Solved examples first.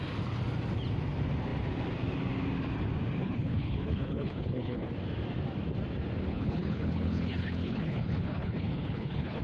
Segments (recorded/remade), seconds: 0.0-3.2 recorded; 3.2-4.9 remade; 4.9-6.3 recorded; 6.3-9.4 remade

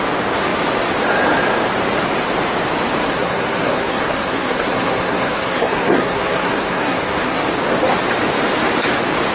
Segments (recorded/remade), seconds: 0.0-3.0 recorded; 3.0-7.4 remade; 7.4-9.3 recorded

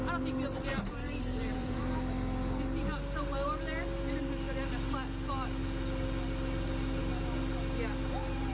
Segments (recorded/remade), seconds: 0.0-0.7 recorded; 0.7-1.8 remade; 1.8-8.5 recorded

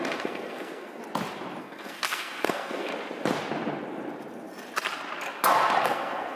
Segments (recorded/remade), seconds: 0.0-1.0 remade; 1.0-1.6 recorded; 1.6-2.9 remade; 2.9-5.8 recorded; 5.8-6.4 remade

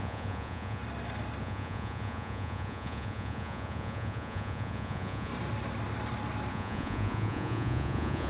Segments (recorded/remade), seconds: 0.0-0.8 remade; 0.8-1.4 recorded; 1.4-5.3 remade; 5.3-6.5 recorded; 6.5-8.3 remade